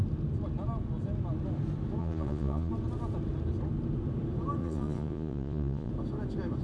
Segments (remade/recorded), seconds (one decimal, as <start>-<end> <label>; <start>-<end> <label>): 0.0-2.0 recorded; 2.0-2.7 remade; 2.7-4.6 recorded; 4.6-5.9 remade; 5.9-6.6 recorded